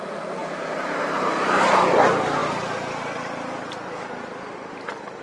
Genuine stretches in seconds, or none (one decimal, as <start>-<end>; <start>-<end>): 0.0-5.2